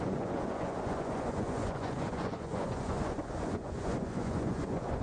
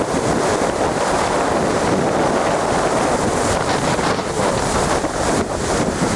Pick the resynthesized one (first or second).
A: first